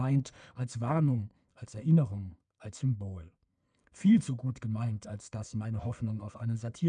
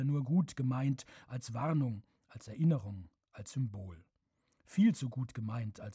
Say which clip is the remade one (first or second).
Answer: first